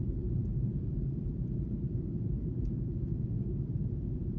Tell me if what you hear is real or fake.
fake